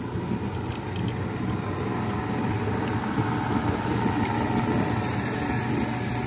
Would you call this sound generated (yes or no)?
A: no